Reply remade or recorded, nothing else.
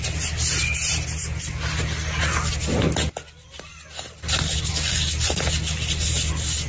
recorded